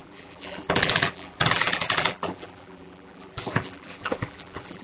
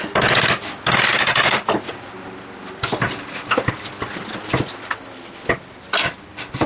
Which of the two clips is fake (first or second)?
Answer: first